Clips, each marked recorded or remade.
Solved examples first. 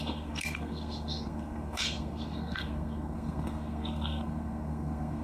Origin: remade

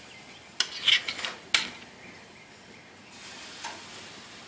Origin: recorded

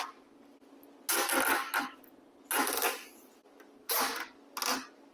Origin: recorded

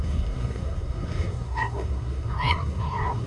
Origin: remade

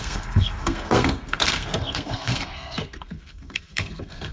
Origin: remade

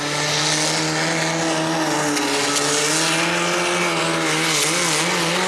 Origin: recorded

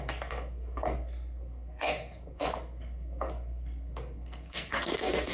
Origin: remade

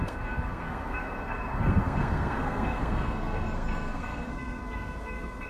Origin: remade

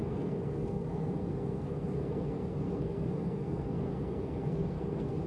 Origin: remade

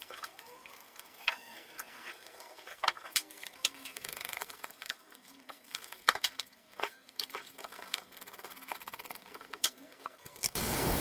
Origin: remade